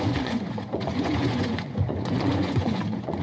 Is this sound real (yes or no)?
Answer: no